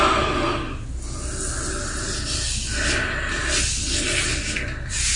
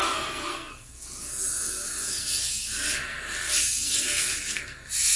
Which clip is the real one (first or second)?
first